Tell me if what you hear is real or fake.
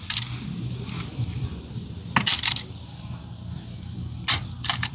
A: real